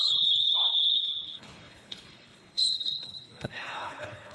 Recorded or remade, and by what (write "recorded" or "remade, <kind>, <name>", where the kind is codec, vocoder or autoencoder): remade, codec, HILCodec